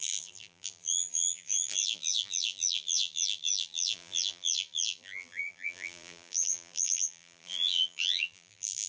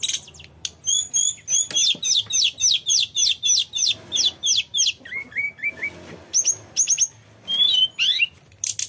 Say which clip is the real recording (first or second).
second